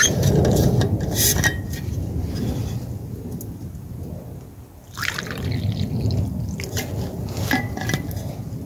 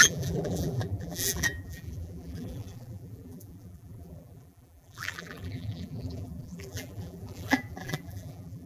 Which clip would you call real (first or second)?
first